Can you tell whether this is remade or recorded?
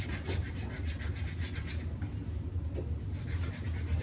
recorded